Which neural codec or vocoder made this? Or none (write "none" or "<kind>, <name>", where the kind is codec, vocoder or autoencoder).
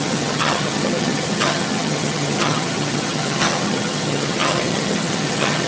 vocoder, HiFi-GAN